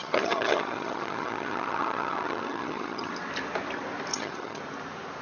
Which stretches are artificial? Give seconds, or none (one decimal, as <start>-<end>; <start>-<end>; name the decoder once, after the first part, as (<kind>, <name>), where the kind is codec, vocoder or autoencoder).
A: 0.0-3.1 (vocoder, HiFi-GAN); 4.1-4.6